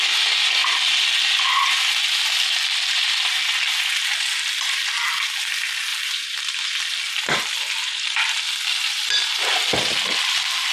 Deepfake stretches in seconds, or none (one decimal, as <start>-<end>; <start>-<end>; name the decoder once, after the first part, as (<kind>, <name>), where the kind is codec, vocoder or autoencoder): 5.9-6.7 (vocoder, BigVGAN v2)